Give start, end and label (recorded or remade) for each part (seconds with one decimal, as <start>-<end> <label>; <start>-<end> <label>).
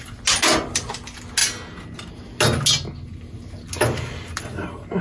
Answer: 0.0-5.0 recorded